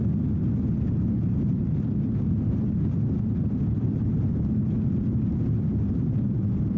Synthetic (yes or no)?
no